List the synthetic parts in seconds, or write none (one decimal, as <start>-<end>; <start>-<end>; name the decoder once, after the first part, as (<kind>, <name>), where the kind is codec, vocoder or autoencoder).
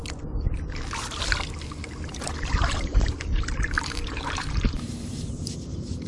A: 2.1-6.1 (vocoder, BigVGAN v2)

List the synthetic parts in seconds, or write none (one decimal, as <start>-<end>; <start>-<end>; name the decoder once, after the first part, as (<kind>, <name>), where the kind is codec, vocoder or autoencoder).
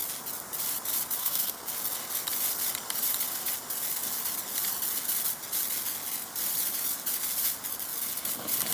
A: 1.2-1.7 (codec, SNAC)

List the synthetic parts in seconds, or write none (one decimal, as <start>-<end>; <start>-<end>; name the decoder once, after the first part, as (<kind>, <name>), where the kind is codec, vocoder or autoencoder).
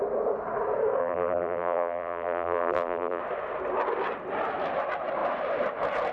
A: 1.0-3.2 (vocoder, BigVGAN v2)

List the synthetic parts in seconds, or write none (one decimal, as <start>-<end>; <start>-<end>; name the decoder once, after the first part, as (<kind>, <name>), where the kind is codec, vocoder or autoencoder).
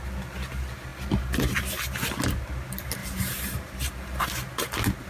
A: 3.0-4.2 (vocoder, BigVGAN v2)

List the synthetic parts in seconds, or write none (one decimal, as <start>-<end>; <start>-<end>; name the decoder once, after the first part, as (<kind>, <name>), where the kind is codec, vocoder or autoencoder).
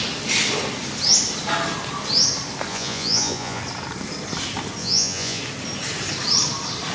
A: 2.7-3.6 (vocoder, Vocos); 4.8-5.4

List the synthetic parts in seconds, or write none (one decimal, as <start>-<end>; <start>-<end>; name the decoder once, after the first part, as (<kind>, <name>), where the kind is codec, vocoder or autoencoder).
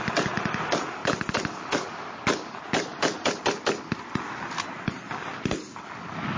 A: none